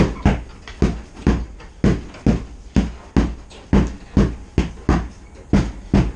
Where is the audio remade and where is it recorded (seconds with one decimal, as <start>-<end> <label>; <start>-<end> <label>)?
0.0-1.2 recorded; 1.2-1.7 remade; 1.7-6.2 recorded